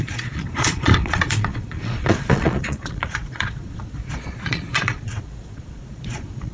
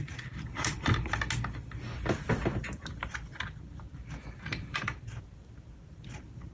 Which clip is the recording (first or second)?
second